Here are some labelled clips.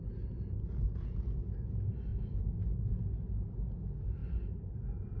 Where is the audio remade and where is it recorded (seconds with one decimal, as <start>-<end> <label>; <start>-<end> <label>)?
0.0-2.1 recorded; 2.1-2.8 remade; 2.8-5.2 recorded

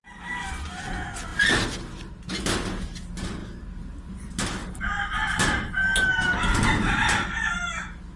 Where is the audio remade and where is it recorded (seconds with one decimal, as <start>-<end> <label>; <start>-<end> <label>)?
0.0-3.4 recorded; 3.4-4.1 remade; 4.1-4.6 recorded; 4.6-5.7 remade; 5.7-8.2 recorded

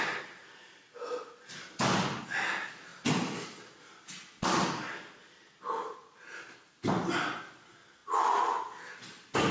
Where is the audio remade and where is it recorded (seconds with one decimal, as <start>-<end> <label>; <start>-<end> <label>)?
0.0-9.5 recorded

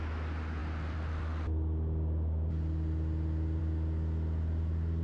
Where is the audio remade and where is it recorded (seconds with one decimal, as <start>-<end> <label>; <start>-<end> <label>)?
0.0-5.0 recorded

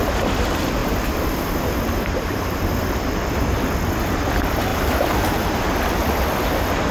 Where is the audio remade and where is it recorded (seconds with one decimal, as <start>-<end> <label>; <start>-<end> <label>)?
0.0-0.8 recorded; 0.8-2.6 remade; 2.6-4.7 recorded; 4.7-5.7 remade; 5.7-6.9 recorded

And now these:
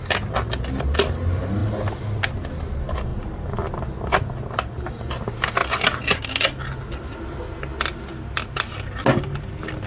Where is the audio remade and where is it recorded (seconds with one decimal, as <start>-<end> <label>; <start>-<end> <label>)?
0.0-5.6 recorded; 5.6-6.2 remade; 6.2-9.9 recorded